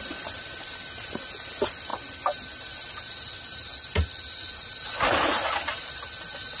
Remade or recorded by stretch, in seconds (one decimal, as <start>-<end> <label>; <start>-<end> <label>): 0.0-6.6 recorded